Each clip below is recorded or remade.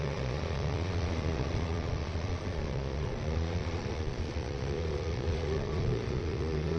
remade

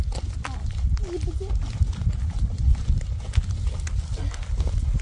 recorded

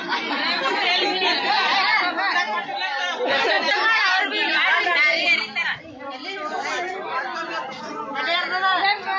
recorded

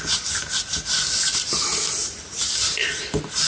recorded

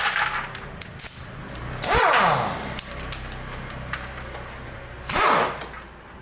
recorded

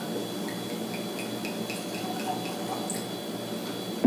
recorded